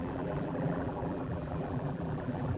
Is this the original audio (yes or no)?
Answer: no